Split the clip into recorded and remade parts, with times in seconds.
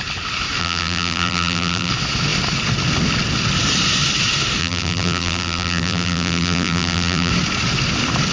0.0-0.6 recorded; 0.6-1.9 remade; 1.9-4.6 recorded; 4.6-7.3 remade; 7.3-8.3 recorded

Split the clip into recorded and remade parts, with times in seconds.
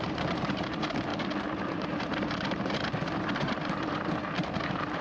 0.0-1.1 remade; 1.1-1.7 recorded; 1.7-5.0 remade